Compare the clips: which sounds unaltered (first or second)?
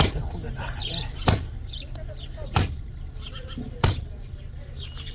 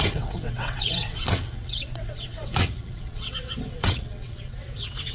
first